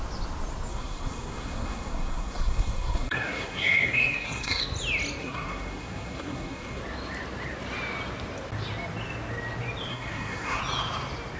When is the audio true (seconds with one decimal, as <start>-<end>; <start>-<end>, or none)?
0.0-0.7; 4.6-5.2; 6.8-9.9; 10.6-11.4